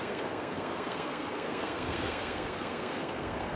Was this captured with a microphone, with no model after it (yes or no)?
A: no